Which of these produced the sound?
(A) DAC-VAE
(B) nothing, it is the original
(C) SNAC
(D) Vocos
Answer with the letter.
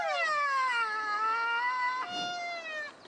B